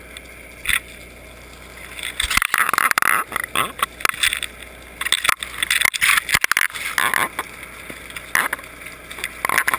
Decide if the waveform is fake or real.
real